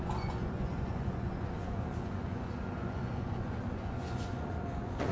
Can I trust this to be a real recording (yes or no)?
no